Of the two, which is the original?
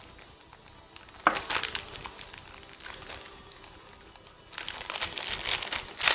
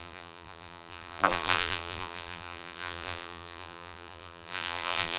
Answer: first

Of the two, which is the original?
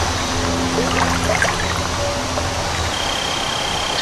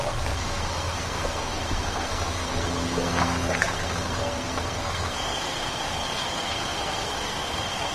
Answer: first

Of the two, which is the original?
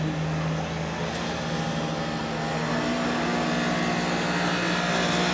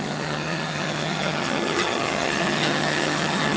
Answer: first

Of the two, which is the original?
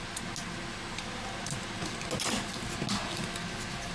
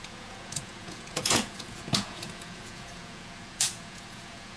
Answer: first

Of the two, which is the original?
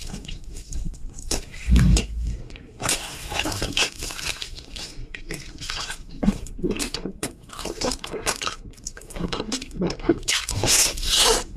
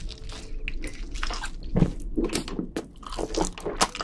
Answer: second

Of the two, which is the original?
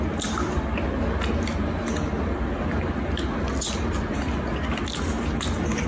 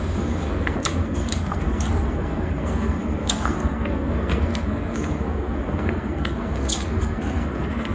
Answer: first